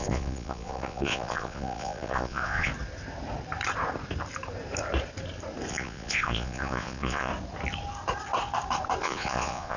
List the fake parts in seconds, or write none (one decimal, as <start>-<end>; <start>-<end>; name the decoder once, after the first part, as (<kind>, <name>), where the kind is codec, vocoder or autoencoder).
0.0-2.7 (vocoder, Vocos); 5.7-7.3; 9.0-9.8